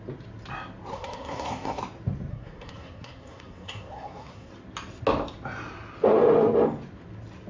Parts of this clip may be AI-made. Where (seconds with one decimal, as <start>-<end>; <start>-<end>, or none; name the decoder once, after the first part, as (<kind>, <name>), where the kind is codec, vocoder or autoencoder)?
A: 0.9-1.8 (codec, SNAC); 2.3-4.5